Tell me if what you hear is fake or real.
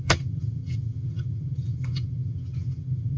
fake